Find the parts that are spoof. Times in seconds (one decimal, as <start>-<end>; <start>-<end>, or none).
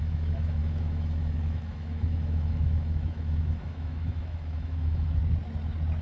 0.0-5.2